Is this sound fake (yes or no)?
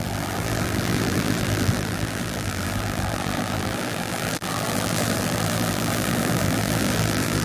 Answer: yes